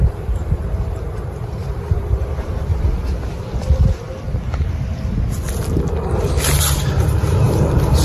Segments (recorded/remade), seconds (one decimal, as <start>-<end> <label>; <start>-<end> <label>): 0.0-2.7 remade; 2.7-6.6 recorded; 6.6-8.0 remade